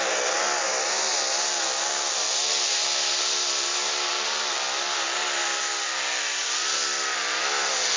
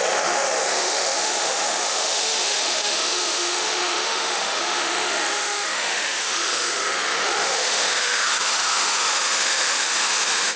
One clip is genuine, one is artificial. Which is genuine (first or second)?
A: first